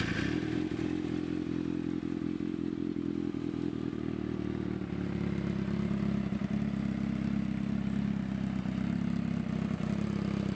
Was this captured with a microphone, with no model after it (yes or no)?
yes